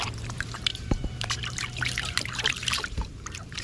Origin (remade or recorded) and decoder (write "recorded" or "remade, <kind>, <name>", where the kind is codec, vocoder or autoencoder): remade, vocoder, BigVGAN v2